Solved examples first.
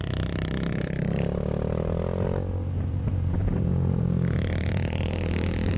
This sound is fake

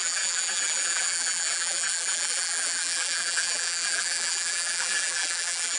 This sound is fake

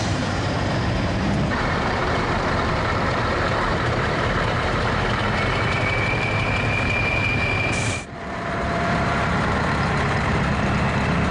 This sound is fake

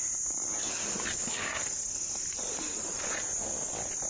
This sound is real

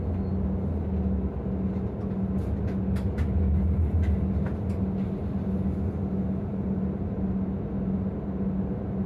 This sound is real